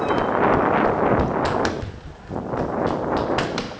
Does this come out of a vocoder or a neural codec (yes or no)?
no